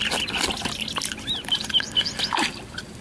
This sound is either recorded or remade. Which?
recorded